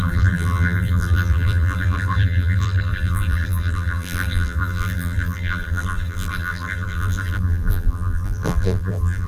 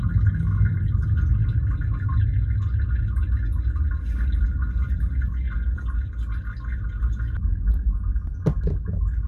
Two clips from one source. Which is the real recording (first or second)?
second